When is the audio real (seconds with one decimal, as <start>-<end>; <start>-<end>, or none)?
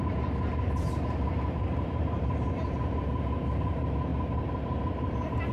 0.0-0.5; 2.8-4.1; 4.8-5.5